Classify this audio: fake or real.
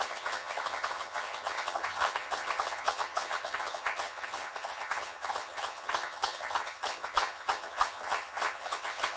fake